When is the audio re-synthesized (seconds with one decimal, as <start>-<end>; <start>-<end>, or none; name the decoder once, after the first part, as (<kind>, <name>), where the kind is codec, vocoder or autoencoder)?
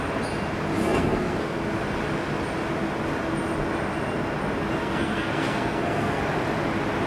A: 0.8-1.6 (codec, SNAC); 4.8-6.2